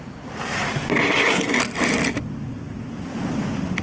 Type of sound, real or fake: real